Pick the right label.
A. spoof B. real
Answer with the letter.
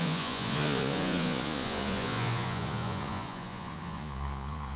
A